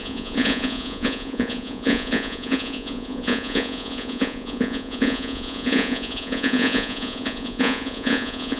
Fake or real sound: fake